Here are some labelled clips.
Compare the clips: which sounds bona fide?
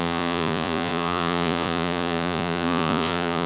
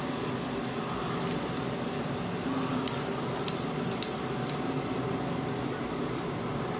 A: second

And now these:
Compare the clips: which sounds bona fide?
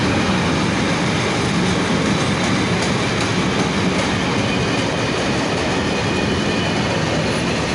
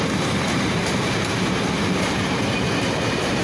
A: first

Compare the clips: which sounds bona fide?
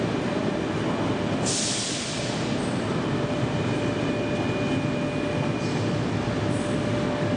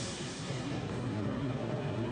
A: first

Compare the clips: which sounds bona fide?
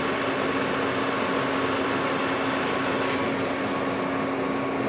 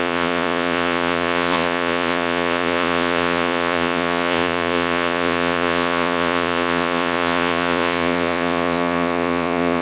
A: first